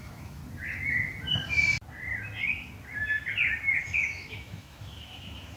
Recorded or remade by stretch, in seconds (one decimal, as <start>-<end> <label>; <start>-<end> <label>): 0.0-0.4 remade; 0.4-3.8 recorded; 3.8-5.6 remade